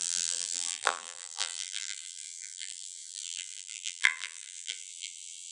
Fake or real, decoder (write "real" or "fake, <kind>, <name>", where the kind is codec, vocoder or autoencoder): fake, vocoder, BigVGAN v2